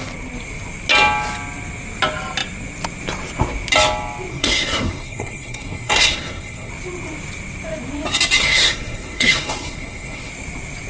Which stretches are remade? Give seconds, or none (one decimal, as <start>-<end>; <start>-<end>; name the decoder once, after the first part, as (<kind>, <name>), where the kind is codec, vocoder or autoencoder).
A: 4.3-6.7 (codec, SNAC); 8.4-10.3